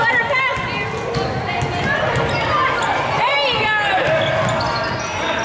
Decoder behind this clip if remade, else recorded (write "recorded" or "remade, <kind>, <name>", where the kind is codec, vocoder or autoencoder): recorded